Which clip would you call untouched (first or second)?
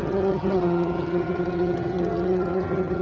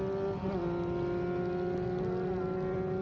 second